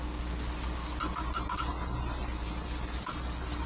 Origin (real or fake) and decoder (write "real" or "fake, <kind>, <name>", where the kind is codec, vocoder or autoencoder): real